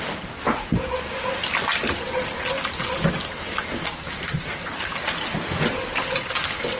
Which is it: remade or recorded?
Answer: recorded